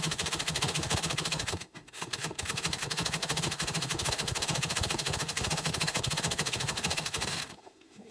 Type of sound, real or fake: fake